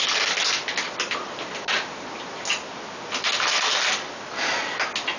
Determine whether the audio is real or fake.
real